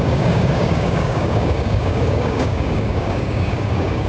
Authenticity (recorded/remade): remade